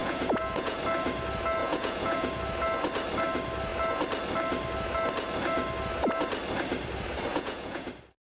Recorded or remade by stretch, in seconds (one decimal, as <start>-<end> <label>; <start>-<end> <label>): 0.0-0.8 remade; 0.8-1.6 recorded; 1.6-2.4 remade; 2.4-7.3 recorded; 7.3-7.9 remade; 7.9-8.3 recorded